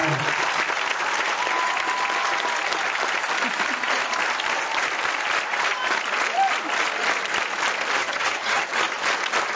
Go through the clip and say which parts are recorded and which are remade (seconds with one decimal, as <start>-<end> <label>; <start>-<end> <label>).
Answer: 0.0-8.0 recorded; 8.0-8.7 remade; 8.7-9.6 recorded